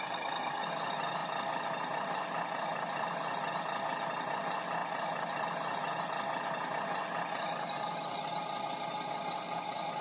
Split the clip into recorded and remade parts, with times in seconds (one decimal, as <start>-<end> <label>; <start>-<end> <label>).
0.0-10.0 recorded